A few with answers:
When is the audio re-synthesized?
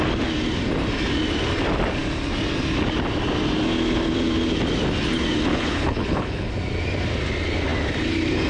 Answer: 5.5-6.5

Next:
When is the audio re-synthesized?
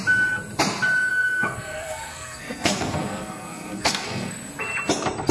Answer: 1.1-4.3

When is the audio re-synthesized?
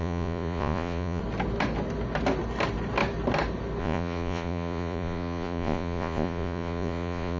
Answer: 0.0-1.2; 3.8-7.4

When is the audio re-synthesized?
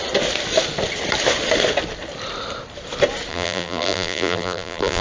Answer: 3.3-5.0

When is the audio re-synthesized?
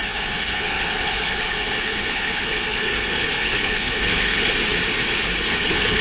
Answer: 0.0-4.5; 5.6-6.0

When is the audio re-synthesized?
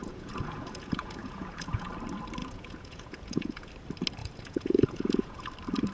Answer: 0.0-1.9; 2.4-3.7; 4.2-5.5